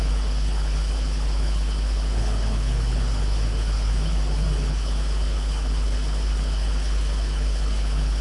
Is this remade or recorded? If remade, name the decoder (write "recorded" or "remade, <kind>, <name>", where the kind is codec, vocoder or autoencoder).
remade, codec, HILCodec